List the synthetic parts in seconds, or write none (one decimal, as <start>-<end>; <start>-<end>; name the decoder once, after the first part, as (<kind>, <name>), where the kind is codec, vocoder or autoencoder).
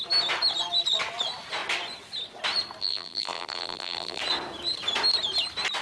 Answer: 2.8-4.2 (vocoder, BigVGAN v2)